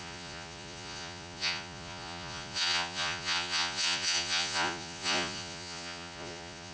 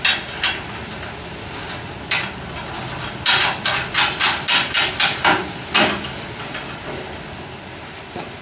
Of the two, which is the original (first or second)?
second